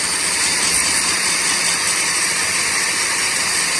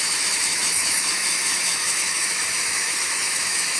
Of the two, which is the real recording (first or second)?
first